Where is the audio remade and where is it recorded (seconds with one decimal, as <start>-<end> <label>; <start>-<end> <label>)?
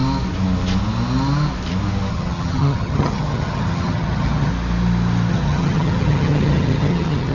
0.0-2.1 recorded; 2.1-4.5 remade; 4.5-5.3 recorded; 5.3-7.3 remade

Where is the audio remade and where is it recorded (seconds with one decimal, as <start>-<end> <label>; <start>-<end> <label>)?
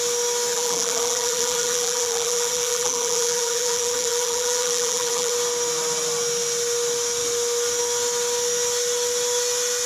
0.0-0.5 recorded; 0.5-5.3 remade; 5.3-9.9 recorded